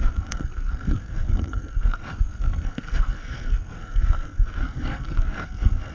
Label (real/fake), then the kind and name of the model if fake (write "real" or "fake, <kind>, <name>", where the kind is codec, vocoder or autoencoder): fake, codec, SNAC